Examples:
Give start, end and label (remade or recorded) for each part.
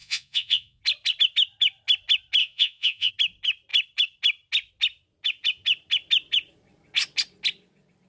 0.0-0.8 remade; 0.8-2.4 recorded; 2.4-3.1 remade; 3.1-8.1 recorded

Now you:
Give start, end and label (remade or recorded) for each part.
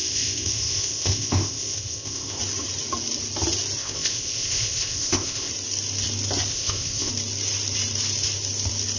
0.0-2.4 remade; 2.4-3.8 recorded; 3.8-5.5 remade; 5.5-6.5 recorded; 6.5-7.1 remade; 7.1-9.0 recorded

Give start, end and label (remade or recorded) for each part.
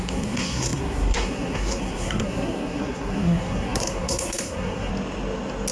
0.0-4.9 remade; 4.9-5.7 recorded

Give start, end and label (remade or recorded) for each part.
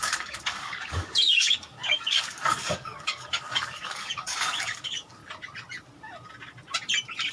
0.0-5.2 remade; 5.2-7.3 recorded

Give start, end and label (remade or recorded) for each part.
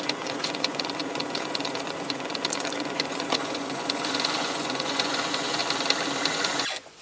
0.0-5.6 remade; 5.6-6.3 recorded; 6.3-7.0 remade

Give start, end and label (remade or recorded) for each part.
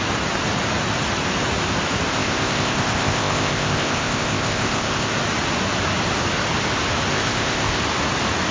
0.0-2.1 recorded; 2.1-5.1 remade; 5.1-7.1 recorded; 7.1-7.8 remade; 7.8-8.5 recorded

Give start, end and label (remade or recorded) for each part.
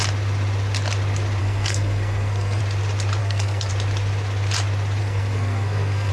0.0-1.4 recorded; 1.4-2.6 remade; 2.6-3.2 recorded; 3.2-3.7 remade; 3.7-5.0 recorded; 5.0-6.1 remade